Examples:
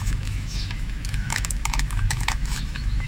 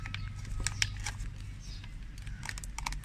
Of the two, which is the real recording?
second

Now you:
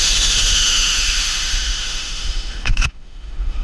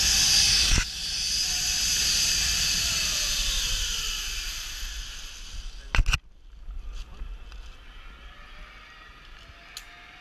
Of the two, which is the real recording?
second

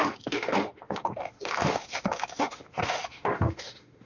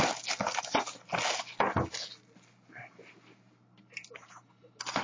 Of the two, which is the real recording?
second